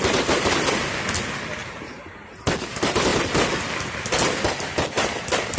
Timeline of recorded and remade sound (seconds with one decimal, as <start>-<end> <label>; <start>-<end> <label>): 0.0-0.7 remade; 0.7-1.6 recorded; 1.6-2.3 remade; 2.3-5.6 recorded